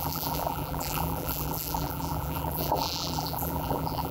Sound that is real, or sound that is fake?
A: fake